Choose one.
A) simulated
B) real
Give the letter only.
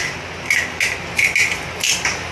B